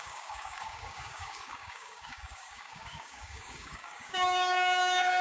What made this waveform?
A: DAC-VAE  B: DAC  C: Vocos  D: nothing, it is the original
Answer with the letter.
B